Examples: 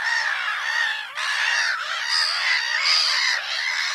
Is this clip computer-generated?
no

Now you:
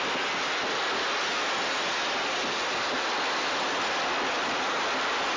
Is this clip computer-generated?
no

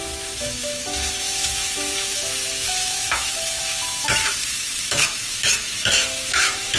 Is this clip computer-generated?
yes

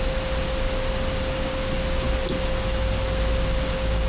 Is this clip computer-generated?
no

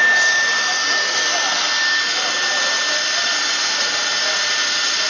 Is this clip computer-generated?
no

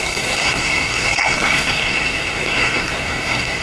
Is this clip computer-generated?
yes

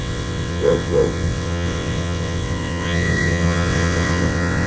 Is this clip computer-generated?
yes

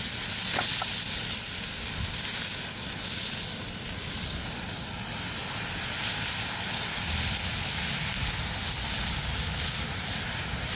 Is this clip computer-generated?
no